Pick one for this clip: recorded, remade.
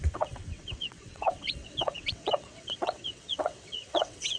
remade